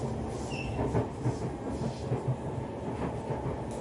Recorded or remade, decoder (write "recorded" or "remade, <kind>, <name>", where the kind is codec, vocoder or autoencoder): recorded